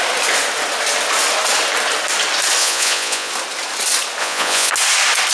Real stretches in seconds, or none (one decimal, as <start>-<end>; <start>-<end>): 0.0-2.6; 3.3-4.2; 4.7-5.3